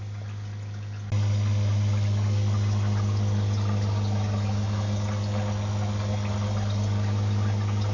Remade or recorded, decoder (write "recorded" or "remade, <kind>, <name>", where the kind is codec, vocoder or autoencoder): recorded